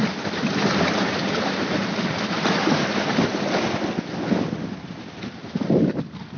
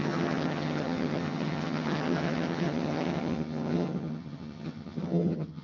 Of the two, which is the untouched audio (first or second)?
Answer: first